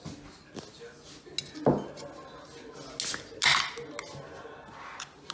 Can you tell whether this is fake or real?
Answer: real